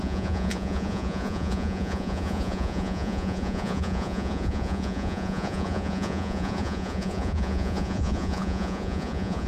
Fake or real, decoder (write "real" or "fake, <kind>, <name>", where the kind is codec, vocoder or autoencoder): fake, vocoder, Vocos